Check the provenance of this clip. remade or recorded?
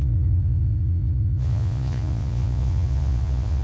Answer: remade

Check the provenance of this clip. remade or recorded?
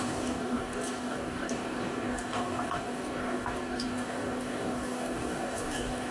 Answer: remade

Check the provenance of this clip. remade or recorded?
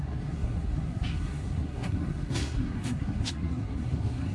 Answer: remade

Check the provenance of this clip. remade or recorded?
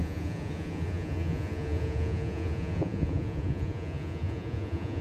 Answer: remade